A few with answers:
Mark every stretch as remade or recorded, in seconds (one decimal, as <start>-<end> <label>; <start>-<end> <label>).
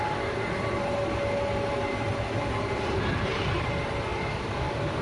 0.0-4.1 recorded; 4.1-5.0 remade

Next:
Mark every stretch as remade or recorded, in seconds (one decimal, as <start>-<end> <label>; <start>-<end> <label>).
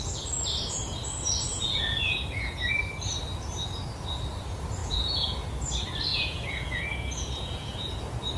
0.0-1.5 recorded; 1.5-2.8 remade; 2.8-4.8 recorded; 4.8-5.5 remade; 5.5-6.1 recorded; 6.1-8.0 remade; 8.0-8.4 recorded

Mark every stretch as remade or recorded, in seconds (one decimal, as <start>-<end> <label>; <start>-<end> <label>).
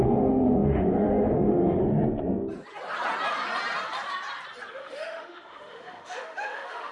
0.0-1.8 remade; 1.8-4.7 recorded; 4.7-6.9 remade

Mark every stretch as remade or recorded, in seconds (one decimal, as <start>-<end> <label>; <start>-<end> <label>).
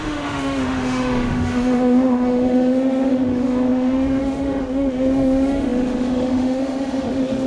0.0-7.5 remade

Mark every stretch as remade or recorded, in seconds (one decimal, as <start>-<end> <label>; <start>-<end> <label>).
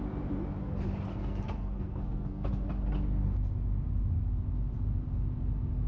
0.0-1.1 recorded; 1.1-2.5 remade; 2.5-5.9 recorded